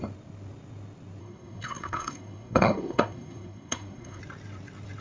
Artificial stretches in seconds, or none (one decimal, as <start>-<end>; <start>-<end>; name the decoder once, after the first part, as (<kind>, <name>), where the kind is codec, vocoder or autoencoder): 1.2-4.2 (codec, SNAC)